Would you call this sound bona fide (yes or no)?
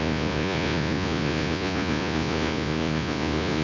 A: no